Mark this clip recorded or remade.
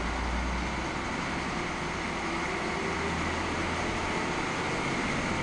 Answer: recorded